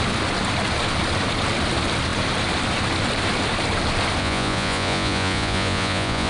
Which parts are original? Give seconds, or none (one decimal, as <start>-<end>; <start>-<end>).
0.0-4.2